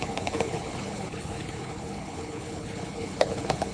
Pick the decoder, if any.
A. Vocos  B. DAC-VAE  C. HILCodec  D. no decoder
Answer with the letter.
C